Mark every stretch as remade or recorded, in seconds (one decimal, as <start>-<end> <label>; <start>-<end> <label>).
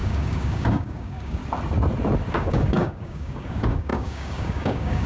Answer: 0.0-1.4 remade; 1.4-2.3 recorded; 2.3-5.1 remade